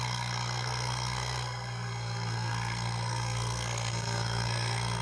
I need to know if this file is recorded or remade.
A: remade